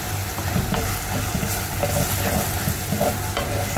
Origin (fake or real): real